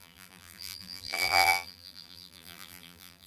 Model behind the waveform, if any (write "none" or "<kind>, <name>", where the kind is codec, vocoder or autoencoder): vocoder, BigVGAN v2